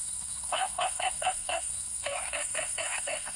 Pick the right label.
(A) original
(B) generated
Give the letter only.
B